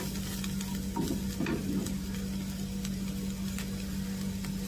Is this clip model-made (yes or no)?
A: no